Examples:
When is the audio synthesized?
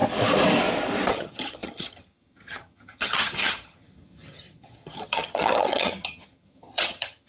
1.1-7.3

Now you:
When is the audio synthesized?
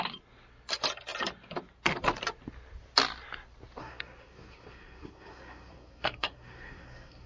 3.8-7.3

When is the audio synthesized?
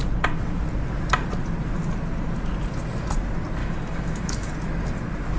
3.6-4.5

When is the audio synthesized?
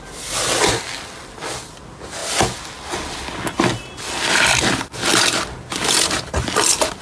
none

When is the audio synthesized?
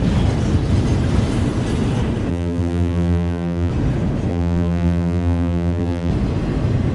2.3-3.7; 4.3-6.1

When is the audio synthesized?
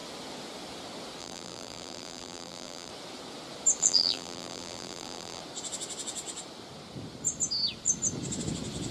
1.2-2.9; 3.8-5.4